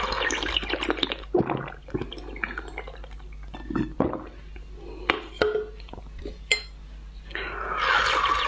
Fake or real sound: real